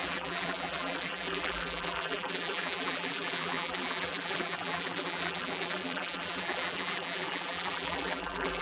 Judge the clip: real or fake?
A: fake